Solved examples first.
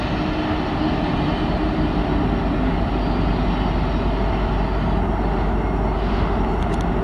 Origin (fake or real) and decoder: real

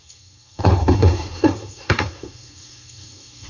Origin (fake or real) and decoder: fake, codec, SNAC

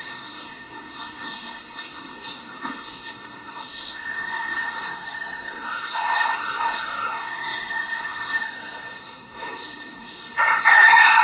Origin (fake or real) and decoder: fake, codec, SNAC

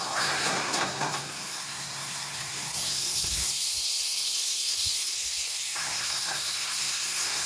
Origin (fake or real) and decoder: fake, codec, SNAC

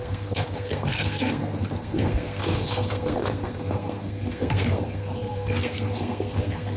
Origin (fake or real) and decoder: fake, codec, SNAC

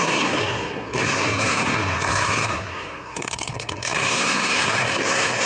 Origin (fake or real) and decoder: fake, codec, SNAC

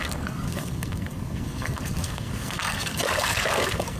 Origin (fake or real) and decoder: fake, codec, SNAC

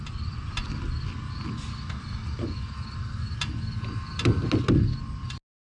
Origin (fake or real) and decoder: real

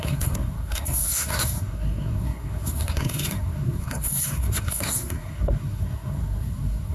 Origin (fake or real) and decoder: fake, codec, SNAC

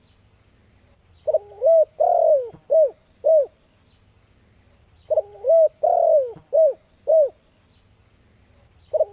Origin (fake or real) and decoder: real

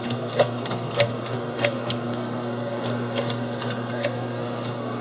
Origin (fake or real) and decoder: fake, codec, SNAC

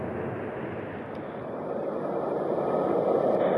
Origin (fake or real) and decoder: real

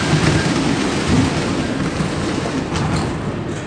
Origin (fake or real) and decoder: real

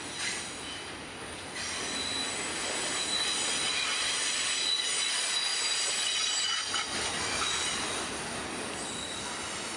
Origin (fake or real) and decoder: real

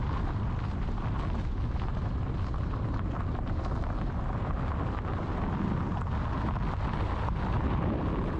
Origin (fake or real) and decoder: real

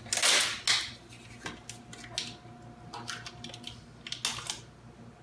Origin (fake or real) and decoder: real